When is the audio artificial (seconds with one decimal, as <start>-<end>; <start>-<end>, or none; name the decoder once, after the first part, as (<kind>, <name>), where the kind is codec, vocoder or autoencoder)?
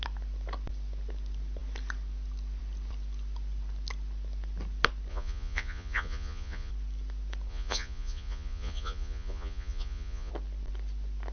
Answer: 5.1-6.7 (vocoder, Vocos); 7.5-10.3